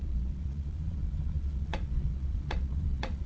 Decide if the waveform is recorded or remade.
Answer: remade